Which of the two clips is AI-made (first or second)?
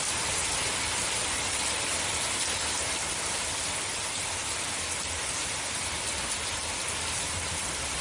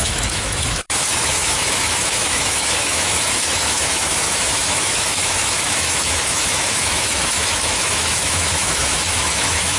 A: second